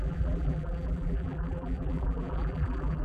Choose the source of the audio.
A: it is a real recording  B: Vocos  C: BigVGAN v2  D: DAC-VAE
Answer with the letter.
C